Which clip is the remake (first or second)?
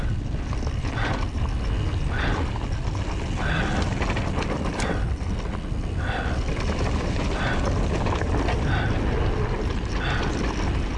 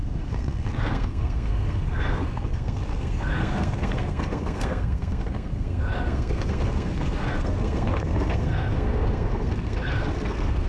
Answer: second